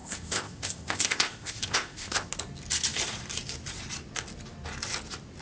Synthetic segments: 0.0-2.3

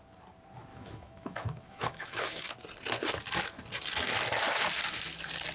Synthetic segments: 0.7-2.5

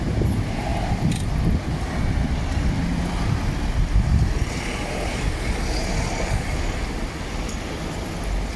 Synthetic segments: none